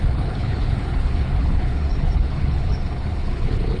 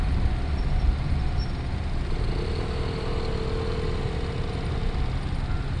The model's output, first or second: first